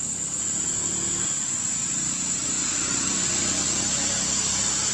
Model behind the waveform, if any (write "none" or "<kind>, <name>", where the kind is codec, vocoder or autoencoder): none